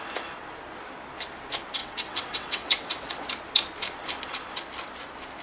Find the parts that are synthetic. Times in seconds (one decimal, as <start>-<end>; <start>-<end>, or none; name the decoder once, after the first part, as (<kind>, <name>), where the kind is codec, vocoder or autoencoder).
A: 1.8-3.1 (vocoder, WaveNeXt)